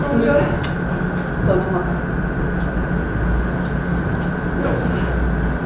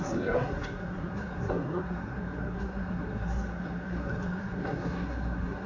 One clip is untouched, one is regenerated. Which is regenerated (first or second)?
second